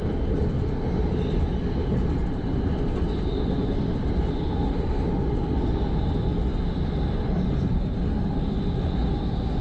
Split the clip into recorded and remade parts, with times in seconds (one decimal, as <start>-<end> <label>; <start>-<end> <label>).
0.0-9.6 recorded